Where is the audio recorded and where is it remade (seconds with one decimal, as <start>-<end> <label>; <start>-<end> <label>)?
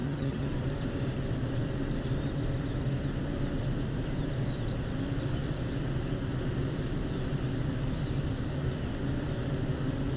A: 0.0-0.5 remade; 0.5-10.2 recorded